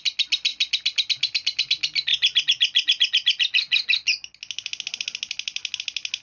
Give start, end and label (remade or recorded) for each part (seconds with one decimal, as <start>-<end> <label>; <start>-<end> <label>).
0.0-6.2 recorded